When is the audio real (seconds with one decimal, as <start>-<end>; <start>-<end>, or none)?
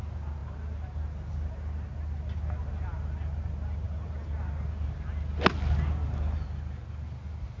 0.0-7.6